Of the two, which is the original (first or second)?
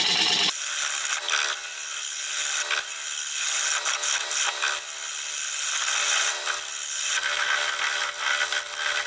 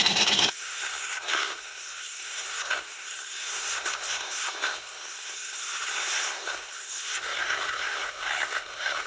first